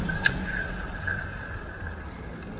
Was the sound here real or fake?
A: real